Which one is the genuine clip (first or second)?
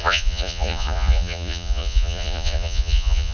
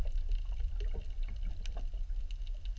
second